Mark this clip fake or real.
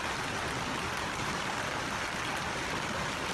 real